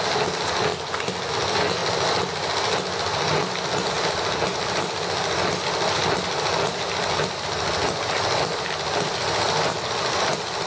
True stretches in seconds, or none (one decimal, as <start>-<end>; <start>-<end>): 0.0-10.7